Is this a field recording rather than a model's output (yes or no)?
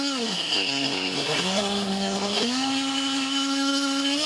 no